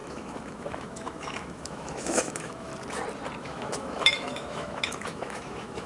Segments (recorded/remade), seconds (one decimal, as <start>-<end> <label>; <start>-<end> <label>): 0.0-2.7 remade; 2.7-3.4 recorded; 3.4-5.9 remade